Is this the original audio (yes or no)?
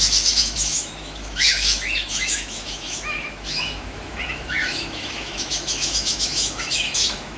no